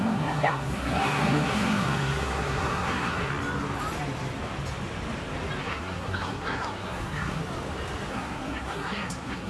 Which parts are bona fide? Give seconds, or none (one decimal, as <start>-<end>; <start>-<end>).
3.3-5.6; 7.4-8.1